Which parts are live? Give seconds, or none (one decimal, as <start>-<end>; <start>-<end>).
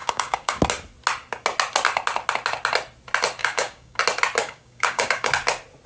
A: 0.6-3.4; 4.0-4.4; 5.3-5.9